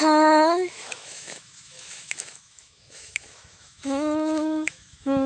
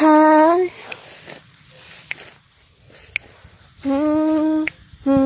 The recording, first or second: second